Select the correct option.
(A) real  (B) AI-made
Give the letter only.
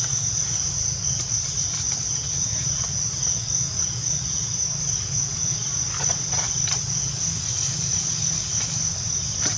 A